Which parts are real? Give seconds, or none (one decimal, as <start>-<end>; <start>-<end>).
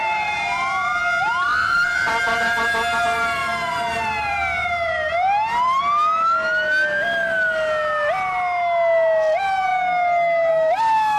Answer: 1.0-1.6; 2.4-3.4; 5.8-11.2